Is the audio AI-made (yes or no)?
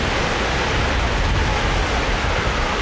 no